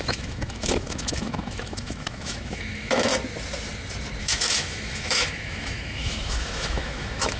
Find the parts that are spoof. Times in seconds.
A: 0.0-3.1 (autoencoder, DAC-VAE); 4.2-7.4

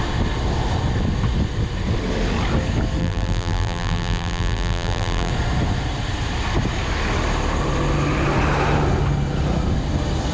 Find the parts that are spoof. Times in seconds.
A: 3.0-5.3 (vocoder, BigVGAN v2)

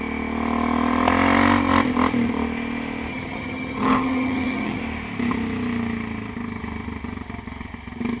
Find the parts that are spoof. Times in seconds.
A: 3.1-4.8 (vocoder, HiFi-GAN)

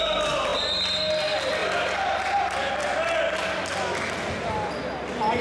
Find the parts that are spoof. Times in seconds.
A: none

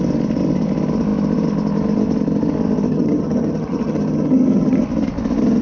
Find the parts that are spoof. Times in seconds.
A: 2.9-4.8 (vocoder, HiFi-GAN)

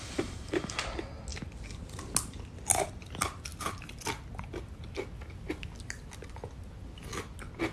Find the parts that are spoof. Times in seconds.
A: none